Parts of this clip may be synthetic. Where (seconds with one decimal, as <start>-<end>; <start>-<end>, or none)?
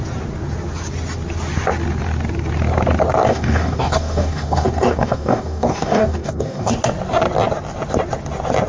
3.3-6.7